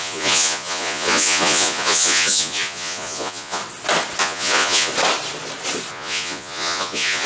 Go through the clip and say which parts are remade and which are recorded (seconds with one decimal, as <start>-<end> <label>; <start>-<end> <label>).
0.0-3.6 remade; 3.6-4.2 recorded; 4.2-4.9 remade; 4.9-5.9 recorded; 5.9-7.3 remade